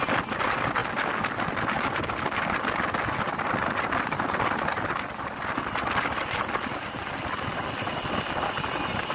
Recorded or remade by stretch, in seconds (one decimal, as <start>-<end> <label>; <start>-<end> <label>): 0.0-9.1 recorded